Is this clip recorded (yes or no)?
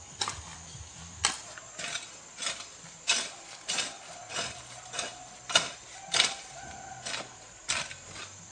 no